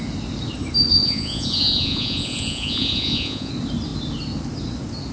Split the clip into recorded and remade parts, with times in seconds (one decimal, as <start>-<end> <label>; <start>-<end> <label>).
0.0-1.0 recorded; 1.0-3.5 remade; 3.5-5.1 recorded